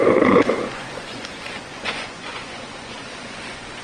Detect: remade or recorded remade